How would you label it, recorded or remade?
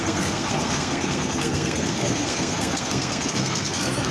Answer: remade